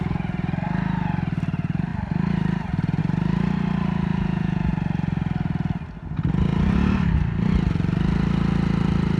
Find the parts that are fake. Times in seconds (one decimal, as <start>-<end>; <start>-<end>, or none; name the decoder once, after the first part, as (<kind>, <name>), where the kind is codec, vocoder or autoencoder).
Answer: 4.1-4.7 (vocoder, Vocos)